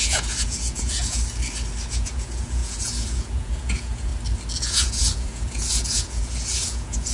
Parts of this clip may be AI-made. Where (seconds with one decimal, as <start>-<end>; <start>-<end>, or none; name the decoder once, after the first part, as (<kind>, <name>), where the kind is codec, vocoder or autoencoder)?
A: 0.0-1.2 (vocoder, Vocos); 1.9-4.1; 4.6-7.1